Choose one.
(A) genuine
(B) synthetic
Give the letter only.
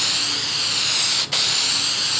A